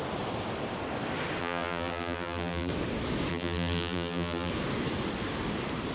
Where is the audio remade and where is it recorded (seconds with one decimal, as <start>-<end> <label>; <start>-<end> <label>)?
0.0-1.4 recorded; 1.4-2.7 remade; 2.7-3.3 recorded; 3.3-4.5 remade; 4.5-5.9 recorded